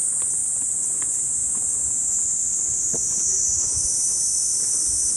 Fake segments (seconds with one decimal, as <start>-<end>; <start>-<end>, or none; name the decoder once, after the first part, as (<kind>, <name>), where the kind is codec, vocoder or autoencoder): none